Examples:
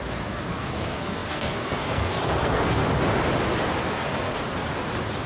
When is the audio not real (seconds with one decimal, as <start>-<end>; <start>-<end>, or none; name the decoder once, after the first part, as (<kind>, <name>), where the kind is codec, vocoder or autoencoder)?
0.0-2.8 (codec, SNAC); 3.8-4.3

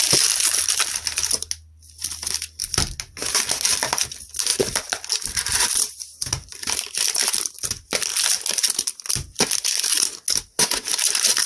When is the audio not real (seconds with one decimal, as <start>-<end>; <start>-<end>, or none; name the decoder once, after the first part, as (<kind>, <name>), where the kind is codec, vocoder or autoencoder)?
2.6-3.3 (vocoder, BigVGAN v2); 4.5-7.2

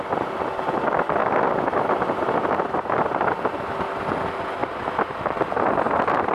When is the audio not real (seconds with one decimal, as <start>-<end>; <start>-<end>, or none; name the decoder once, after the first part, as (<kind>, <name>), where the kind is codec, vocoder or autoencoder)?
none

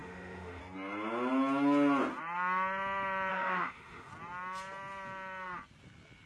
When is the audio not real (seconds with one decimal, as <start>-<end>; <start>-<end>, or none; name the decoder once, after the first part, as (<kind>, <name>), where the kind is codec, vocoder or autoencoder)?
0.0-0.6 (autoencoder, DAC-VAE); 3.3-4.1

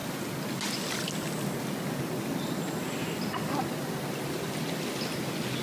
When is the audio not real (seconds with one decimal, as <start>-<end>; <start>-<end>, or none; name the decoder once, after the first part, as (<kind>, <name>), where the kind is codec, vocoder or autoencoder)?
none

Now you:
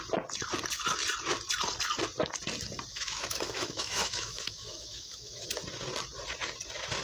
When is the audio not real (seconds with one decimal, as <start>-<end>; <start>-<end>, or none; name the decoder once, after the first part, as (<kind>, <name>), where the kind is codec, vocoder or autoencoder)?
2.9-5.5 (autoencoder, DAC-VAE)

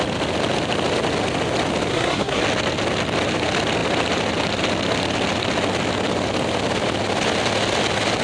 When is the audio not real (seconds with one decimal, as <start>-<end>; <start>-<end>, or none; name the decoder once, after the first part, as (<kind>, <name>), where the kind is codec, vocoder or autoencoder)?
1.9-2.4 (codec, SNAC)

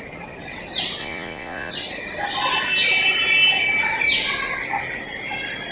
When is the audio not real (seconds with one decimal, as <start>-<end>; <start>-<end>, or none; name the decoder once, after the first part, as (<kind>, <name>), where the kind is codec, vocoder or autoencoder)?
1.0-1.7 (vocoder, Vocos)